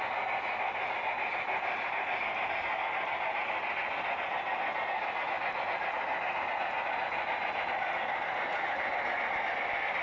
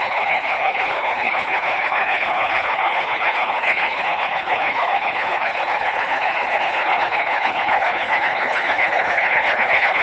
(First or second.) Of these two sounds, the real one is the first